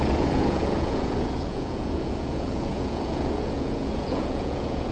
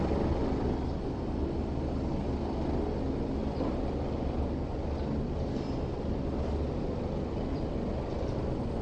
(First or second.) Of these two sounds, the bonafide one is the second